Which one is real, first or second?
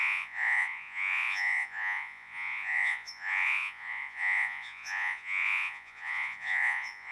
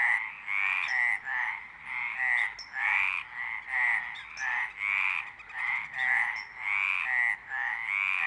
second